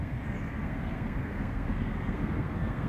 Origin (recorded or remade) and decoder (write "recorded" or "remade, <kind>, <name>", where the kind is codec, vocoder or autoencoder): remade, codec, SNAC